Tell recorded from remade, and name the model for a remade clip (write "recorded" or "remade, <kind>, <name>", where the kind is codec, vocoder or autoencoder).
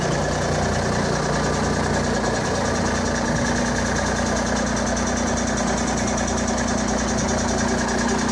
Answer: recorded